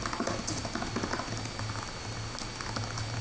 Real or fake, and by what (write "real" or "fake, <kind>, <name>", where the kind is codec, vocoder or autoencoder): real